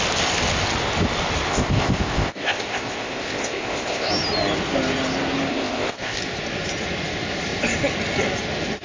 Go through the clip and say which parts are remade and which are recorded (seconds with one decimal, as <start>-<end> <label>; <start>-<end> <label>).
0.0-1.5 recorded; 1.5-4.1 remade; 4.1-5.5 recorded; 5.5-6.2 remade; 6.2-8.8 recorded

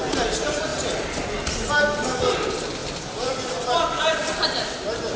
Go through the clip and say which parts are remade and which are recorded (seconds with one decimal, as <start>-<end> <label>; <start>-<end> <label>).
0.0-2.8 recorded; 2.8-4.3 remade; 4.3-5.2 recorded

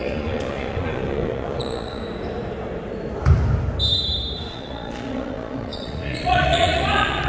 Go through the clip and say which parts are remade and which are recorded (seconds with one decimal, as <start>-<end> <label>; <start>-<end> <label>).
0.0-2.0 remade; 2.0-4.5 recorded; 4.5-7.3 remade

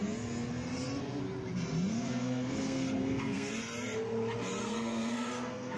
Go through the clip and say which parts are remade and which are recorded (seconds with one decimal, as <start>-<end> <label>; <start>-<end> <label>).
0.0-1.9 recorded; 1.9-3.5 remade; 3.5-4.6 recorded; 4.6-5.8 remade

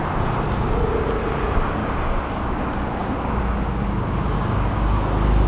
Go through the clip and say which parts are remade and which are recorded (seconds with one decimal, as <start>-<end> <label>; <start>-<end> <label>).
0.0-1.8 recorded; 1.8-2.6 remade; 2.6-3.0 recorded; 3.0-5.5 remade